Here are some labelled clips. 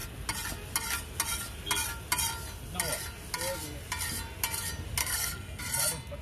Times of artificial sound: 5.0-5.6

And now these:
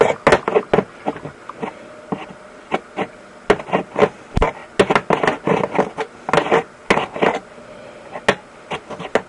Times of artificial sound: none

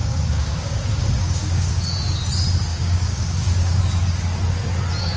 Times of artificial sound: 0.0-1.7; 2.7-3.8

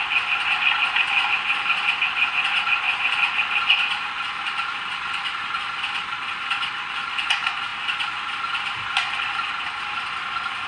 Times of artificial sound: none

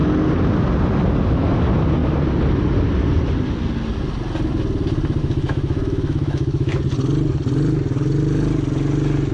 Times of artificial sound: 5.2-6.8

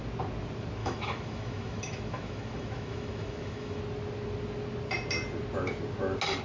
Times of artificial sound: 0.8-3.8

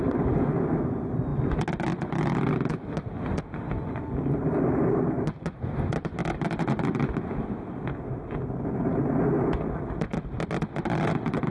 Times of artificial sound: none

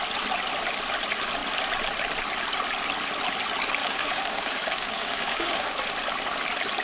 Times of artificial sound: 3.8-5.7